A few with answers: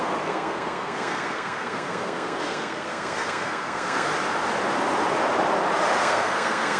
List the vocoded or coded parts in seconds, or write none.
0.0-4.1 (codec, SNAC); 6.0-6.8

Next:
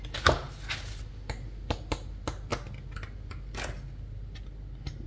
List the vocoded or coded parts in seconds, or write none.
none

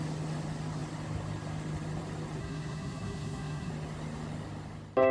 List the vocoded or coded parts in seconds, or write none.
2.4-3.7 (codec, SNAC)

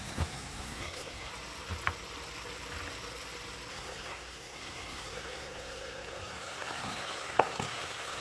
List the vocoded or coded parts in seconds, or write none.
0.0-1.3 (codec, SNAC); 3.7-8.2